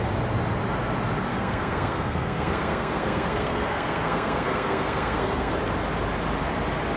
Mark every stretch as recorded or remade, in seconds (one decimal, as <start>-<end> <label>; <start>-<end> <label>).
0.0-1.3 recorded; 1.3-5.5 remade; 5.5-7.0 recorded